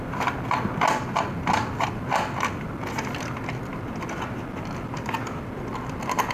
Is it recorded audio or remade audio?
recorded